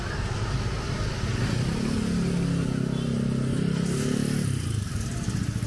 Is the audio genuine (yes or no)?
yes